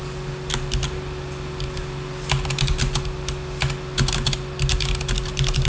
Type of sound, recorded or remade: recorded